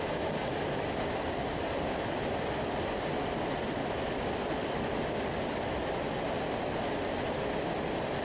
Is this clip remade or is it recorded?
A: recorded